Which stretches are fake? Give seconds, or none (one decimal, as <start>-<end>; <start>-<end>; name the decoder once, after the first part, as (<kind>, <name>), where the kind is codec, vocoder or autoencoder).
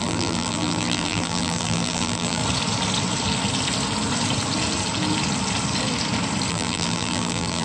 0.0-2.4 (vocoder, BigVGAN v2); 6.5-7.6